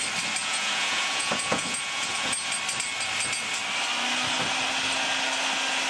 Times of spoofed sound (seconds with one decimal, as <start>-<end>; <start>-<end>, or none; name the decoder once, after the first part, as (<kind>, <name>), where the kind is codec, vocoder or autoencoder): 0.4-2.5 (vocoder, Vocos)